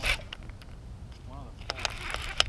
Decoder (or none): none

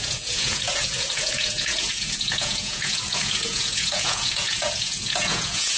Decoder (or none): vocoder, Vocos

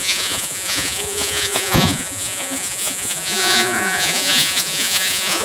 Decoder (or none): vocoder, Vocos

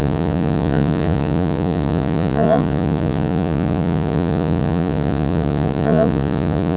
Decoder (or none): vocoder, Vocos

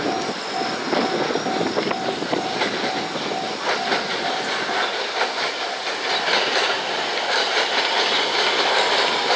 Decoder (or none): none